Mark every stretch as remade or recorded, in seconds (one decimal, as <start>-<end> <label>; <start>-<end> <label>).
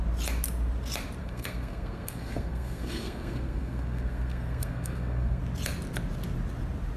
0.0-1.2 recorded; 1.2-5.4 remade; 5.4-7.0 recorded